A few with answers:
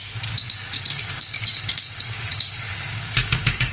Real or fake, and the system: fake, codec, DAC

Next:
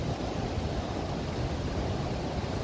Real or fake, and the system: real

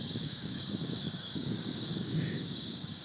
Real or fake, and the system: fake, codec, DAC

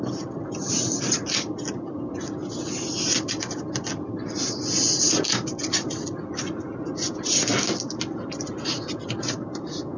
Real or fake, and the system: real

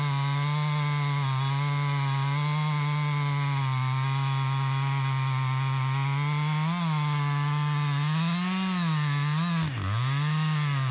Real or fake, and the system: real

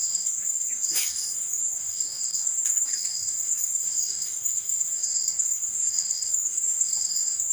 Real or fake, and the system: fake, codec, DAC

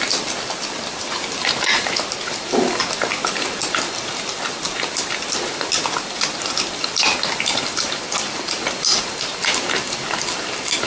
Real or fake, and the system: real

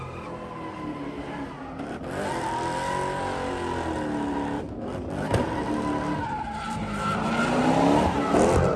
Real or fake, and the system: real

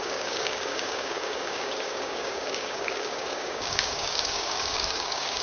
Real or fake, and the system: fake, codec, DAC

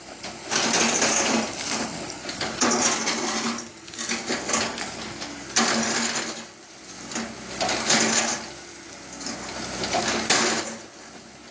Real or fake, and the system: real